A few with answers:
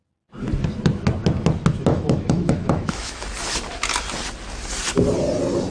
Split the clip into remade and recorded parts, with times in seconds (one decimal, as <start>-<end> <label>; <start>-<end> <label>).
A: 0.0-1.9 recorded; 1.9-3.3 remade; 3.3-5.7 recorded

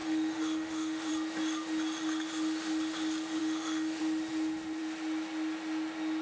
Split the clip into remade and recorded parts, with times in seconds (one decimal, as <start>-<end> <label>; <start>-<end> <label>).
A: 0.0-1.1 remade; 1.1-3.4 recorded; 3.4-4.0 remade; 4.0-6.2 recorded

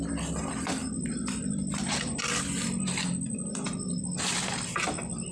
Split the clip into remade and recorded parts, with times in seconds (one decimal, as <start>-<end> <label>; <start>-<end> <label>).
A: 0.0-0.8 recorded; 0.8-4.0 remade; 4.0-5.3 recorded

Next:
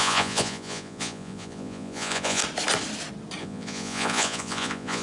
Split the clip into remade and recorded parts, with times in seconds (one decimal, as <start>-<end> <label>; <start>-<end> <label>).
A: 0.0-2.4 remade; 2.4-3.4 recorded; 3.4-5.0 remade